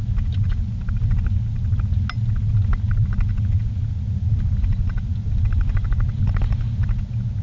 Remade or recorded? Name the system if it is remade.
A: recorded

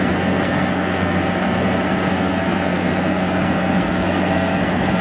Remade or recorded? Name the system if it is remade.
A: remade, codec, SNAC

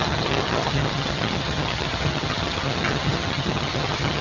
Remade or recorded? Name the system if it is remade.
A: remade, vocoder, HiFi-GAN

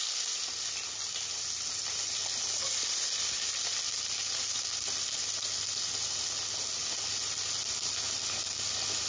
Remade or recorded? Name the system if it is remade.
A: recorded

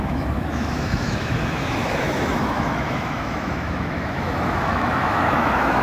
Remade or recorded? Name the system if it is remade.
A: remade, autoencoder, DAC-VAE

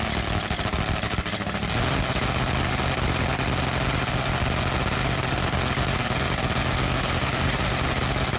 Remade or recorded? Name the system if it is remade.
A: recorded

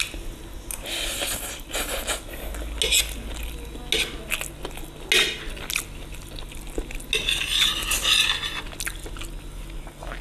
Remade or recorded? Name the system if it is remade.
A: recorded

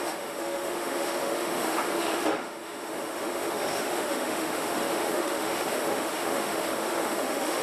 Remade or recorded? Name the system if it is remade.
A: remade, autoencoder, DAC-VAE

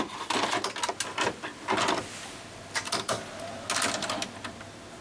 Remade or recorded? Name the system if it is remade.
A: recorded